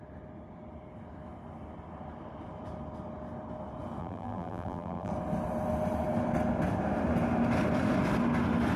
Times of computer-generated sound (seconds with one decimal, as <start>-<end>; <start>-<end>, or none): 4.0-5.1